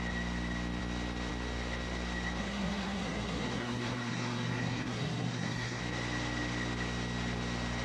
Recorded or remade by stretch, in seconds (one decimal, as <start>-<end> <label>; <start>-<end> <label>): 0.0-2.4 recorded; 2.4-5.8 remade; 5.8-7.8 recorded